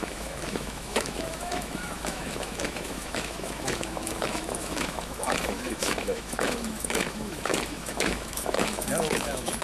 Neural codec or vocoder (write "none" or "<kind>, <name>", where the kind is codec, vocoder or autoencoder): autoencoder, DAC-VAE